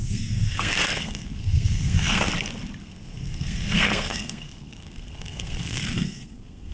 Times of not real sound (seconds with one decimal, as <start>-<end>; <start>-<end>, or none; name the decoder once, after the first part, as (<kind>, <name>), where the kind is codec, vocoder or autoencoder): 0.0-2.3 (codec, SNAC); 2.8-6.7